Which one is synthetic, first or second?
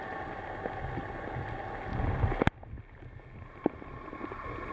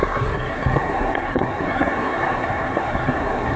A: second